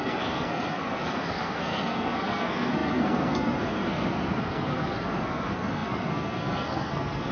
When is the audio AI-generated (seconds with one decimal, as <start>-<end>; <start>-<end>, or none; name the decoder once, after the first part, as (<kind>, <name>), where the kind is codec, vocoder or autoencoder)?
0.0-7.3 (codec, SNAC)